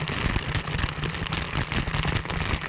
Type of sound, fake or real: real